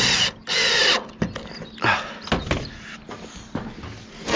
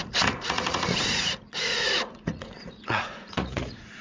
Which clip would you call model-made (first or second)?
second